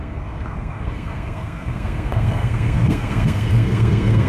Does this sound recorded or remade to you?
remade